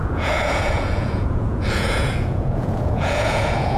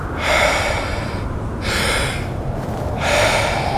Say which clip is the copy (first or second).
first